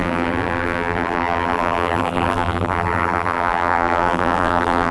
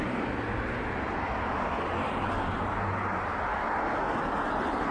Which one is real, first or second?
second